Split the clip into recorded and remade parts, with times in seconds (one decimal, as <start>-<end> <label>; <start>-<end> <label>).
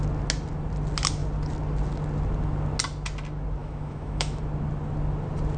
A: 0.0-3.6 recorded; 3.6-4.4 remade; 4.4-5.6 recorded